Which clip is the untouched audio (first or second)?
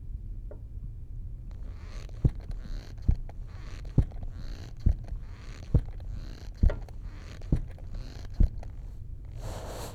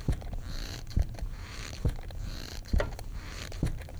first